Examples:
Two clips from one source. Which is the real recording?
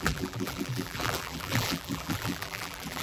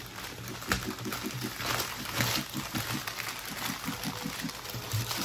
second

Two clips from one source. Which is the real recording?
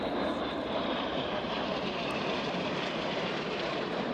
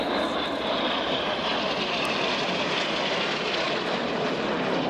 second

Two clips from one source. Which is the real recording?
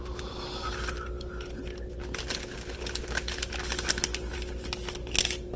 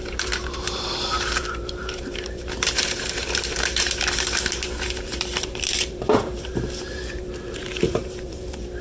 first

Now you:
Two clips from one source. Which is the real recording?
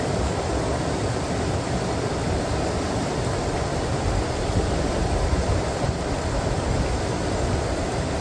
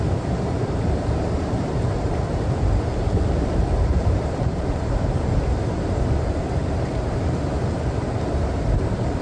first